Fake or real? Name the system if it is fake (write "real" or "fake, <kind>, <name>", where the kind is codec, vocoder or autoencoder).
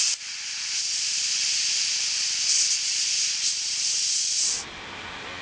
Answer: real